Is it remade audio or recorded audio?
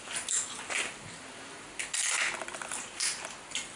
recorded